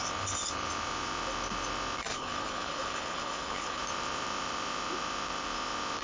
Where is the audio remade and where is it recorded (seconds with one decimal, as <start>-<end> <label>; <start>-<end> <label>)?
0.0-2.1 recorded; 2.1-3.8 remade; 3.8-6.0 recorded